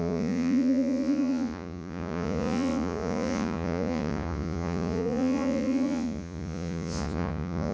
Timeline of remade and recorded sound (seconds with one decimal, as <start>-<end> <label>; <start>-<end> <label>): 0.0-7.7 remade